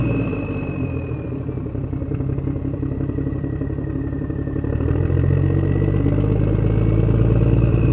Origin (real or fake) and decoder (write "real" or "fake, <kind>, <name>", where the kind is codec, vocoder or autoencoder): fake, vocoder, BigVGAN v2